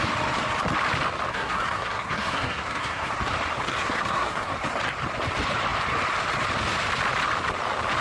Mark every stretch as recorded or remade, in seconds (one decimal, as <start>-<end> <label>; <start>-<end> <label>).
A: 0.0-1.3 recorded; 1.3-3.1 remade; 3.1-3.7 recorded; 3.7-4.5 remade; 4.5-8.0 recorded